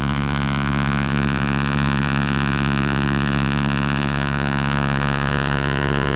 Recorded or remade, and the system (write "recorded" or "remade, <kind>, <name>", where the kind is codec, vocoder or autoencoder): remade, vocoder, Vocos